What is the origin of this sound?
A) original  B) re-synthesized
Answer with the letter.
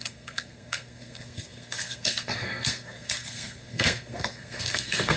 B